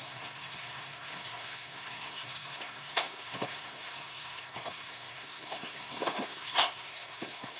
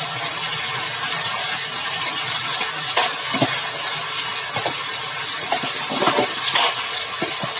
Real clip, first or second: second